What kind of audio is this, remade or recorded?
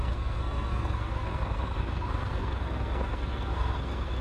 remade